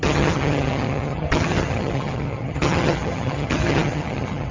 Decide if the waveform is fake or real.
fake